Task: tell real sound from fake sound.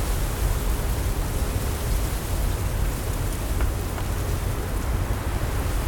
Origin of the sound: real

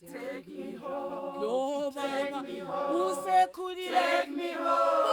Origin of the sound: fake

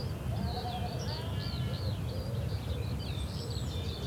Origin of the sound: real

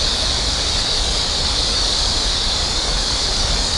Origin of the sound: fake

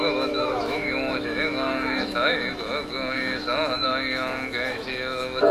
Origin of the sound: fake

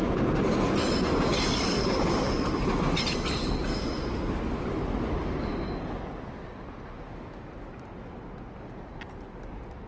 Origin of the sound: real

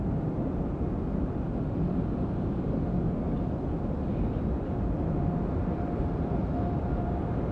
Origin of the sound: real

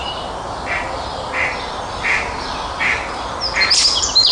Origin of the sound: real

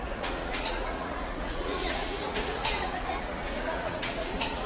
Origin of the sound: fake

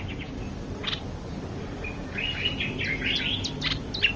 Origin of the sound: real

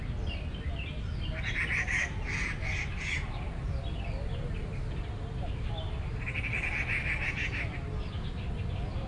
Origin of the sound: real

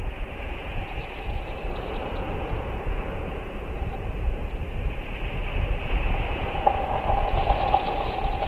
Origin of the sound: fake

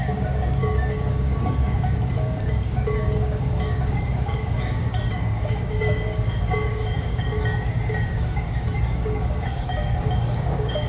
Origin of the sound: fake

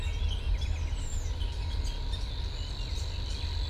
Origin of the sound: real